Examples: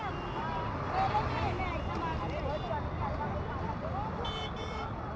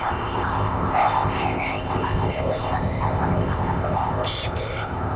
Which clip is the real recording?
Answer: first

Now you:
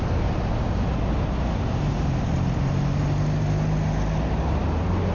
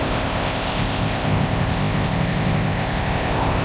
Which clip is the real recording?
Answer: first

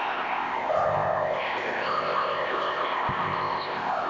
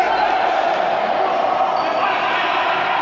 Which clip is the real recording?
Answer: second